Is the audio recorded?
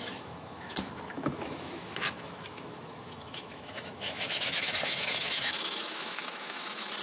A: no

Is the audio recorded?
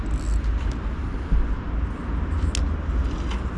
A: yes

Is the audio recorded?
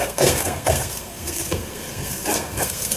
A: no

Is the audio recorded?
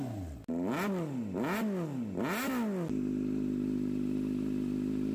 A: yes